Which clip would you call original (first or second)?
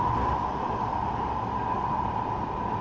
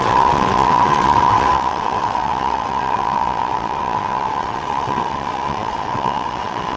first